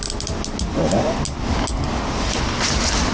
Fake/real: real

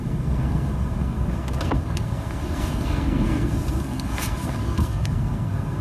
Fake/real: fake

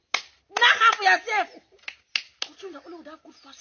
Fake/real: real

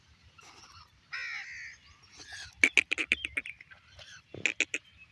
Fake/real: real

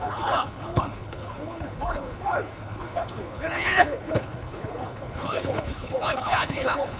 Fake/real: fake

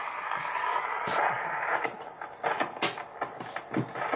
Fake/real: real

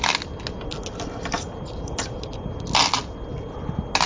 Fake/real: real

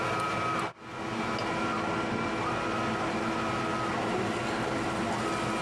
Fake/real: real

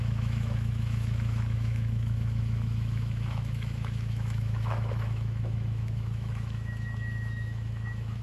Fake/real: fake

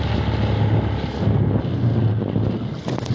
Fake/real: real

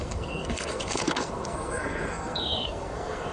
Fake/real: fake